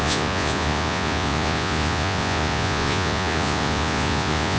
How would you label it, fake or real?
fake